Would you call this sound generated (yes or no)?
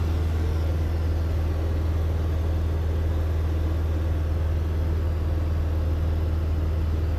no